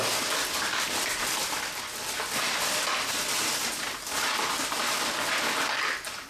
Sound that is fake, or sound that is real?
real